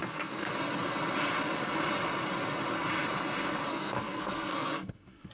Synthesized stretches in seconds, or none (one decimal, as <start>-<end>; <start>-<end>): 0.0-0.5; 3.7-5.3